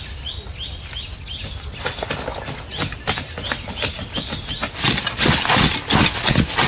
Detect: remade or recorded recorded